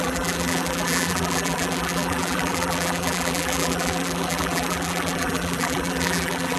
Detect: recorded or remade remade